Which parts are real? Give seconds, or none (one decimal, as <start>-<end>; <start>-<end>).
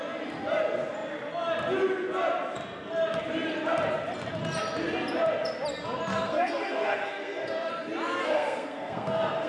0.0-6.1; 7.7-8.2